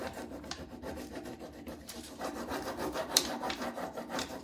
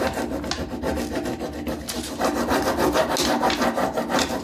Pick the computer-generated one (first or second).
first